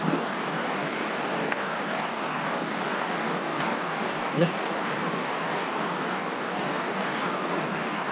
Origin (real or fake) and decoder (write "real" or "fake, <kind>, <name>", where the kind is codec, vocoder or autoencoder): fake, codec, DAC